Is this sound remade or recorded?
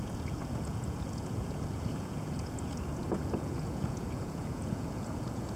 remade